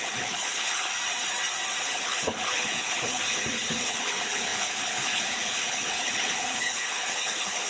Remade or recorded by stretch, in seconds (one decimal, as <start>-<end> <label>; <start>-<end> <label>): 0.0-0.9 remade; 0.9-1.8 recorded; 1.8-7.7 remade